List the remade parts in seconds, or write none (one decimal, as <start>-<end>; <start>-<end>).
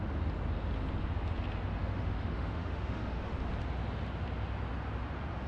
1.8-3.3